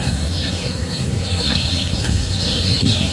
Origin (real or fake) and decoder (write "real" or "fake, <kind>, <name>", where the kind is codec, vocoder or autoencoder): fake, codec, SNAC